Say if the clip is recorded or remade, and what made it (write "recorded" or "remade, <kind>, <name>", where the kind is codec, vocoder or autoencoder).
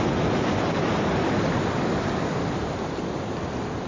recorded